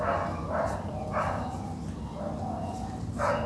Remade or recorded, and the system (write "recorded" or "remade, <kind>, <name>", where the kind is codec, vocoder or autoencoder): recorded